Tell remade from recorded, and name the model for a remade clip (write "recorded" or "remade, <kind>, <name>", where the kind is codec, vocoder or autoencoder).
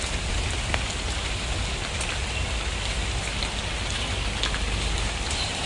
recorded